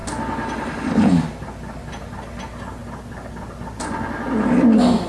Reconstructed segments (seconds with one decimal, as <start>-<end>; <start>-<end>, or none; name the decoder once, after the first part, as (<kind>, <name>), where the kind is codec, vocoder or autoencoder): none